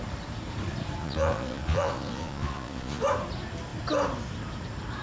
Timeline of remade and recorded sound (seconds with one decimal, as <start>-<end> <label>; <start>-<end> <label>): 0.0-1.0 recorded; 1.0-3.0 remade; 3.0-5.0 recorded